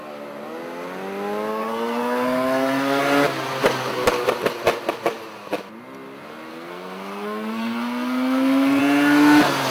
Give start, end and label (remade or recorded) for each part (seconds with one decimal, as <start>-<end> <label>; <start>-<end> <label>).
0.0-1.5 recorded; 1.5-3.0 remade; 3.0-6.5 recorded; 6.5-8.8 remade; 8.8-9.7 recorded